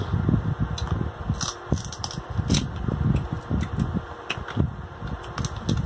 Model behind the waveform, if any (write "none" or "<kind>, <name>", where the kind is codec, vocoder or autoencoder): none